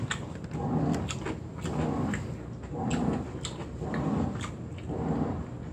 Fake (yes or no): no